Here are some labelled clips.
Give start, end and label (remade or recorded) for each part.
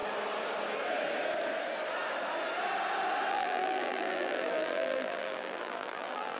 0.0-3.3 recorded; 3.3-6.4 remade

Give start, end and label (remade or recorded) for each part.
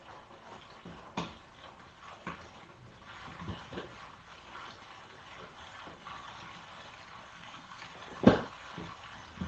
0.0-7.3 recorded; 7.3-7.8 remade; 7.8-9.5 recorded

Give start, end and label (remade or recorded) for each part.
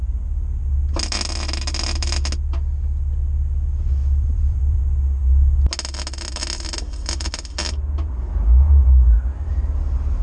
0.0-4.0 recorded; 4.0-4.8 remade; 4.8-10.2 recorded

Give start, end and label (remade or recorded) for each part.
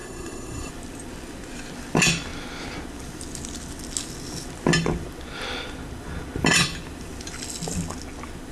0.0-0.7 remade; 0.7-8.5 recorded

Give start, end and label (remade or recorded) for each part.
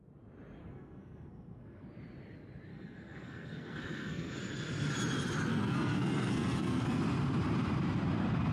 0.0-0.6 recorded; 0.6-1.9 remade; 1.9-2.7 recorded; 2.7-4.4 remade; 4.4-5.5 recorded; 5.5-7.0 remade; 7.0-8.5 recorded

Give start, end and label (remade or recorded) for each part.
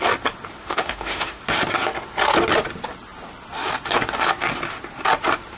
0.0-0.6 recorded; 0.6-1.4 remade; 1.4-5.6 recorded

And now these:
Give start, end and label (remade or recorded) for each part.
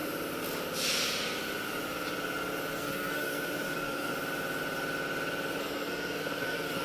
0.0-2.7 recorded; 2.7-4.1 remade; 4.1-5.6 recorded; 5.6-6.8 remade